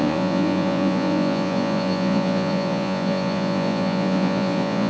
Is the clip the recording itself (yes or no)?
no